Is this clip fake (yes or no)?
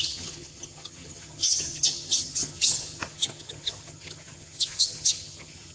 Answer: yes